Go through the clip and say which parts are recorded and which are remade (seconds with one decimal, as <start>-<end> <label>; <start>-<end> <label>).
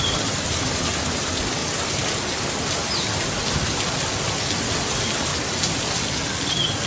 0.0-1.6 remade; 1.6-2.5 recorded; 2.5-5.3 remade; 5.3-5.9 recorded; 5.9-6.9 remade